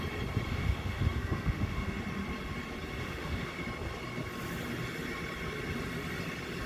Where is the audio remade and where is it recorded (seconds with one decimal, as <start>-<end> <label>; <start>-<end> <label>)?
0.0-0.5 recorded; 0.5-2.0 remade; 2.0-3.0 recorded; 3.0-3.6 remade; 3.6-6.7 recorded